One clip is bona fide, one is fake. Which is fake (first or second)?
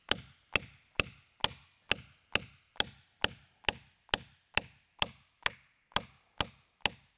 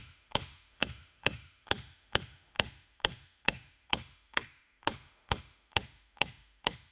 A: second